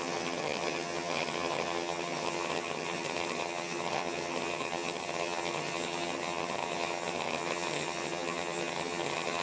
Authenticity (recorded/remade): remade